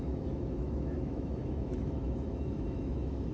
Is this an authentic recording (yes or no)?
no